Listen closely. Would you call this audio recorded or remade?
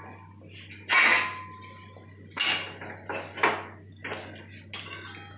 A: recorded